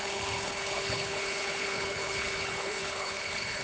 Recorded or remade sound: remade